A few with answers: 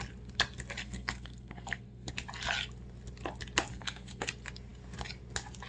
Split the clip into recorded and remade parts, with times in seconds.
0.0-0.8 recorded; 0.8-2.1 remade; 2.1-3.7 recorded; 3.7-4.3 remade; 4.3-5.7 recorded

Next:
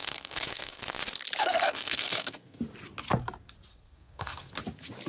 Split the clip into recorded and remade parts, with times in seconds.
0.0-0.8 remade; 0.8-1.4 recorded; 1.4-2.6 remade; 2.6-3.7 recorded; 3.7-4.5 remade; 4.5-5.1 recorded

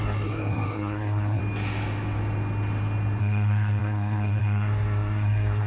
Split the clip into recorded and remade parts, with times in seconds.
0.0-1.4 remade; 1.4-3.2 recorded; 3.2-5.7 remade

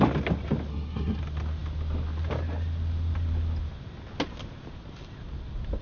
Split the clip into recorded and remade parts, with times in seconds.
0.0-0.7 recorded; 0.7-1.2 remade; 1.2-5.8 recorded

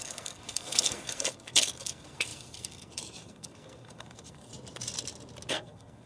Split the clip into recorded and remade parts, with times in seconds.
0.0-4.5 remade; 4.5-5.5 recorded; 5.5-6.1 remade

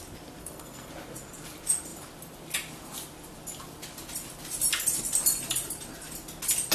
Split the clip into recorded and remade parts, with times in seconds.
0.0-0.4 recorded; 0.4-0.9 remade; 0.9-6.7 recorded

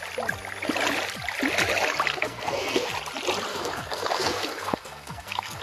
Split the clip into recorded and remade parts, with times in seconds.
0.0-2.1 recorded; 2.1-2.9 remade; 2.9-3.5 recorded; 3.5-5.6 remade

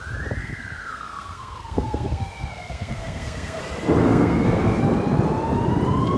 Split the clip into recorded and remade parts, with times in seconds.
0.0-0.4 recorded; 0.4-3.6 remade; 3.6-4.0 recorded; 4.0-4.8 remade; 4.8-6.2 recorded